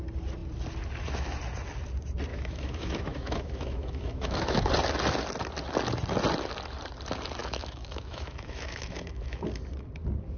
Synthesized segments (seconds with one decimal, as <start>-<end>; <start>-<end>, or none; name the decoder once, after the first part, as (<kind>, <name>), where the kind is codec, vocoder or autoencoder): 2.3-4.7 (autoencoder, DAC-VAE); 7.4-9.4